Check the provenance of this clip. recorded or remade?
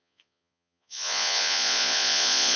remade